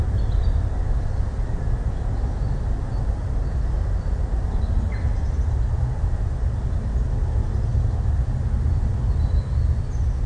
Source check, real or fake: real